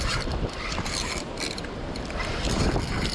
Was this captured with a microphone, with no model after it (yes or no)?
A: no